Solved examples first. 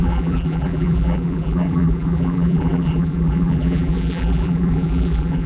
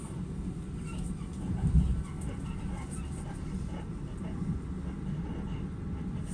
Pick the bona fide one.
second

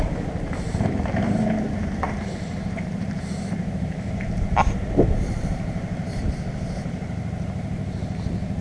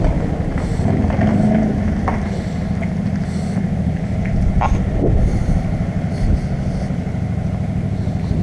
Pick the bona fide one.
second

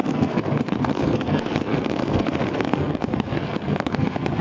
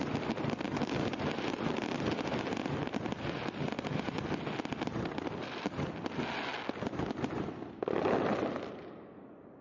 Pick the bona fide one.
second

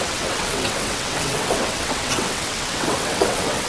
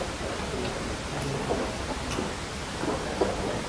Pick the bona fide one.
second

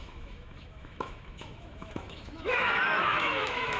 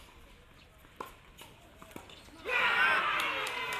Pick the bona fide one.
second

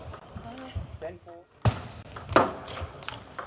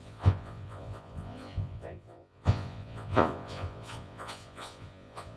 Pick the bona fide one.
first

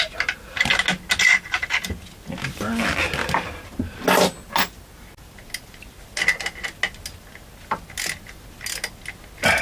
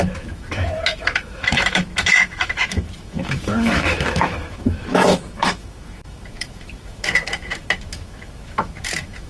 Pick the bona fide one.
first